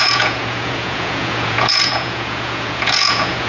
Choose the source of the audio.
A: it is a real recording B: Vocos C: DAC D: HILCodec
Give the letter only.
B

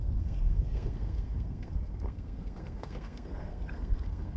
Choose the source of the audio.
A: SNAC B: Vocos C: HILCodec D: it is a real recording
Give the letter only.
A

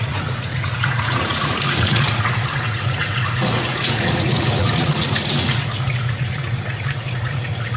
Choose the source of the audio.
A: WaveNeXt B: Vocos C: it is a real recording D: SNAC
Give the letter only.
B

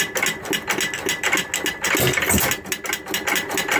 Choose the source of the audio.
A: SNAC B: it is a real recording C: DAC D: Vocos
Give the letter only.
B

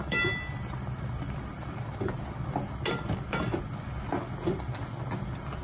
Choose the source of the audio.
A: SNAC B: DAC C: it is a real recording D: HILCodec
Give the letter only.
C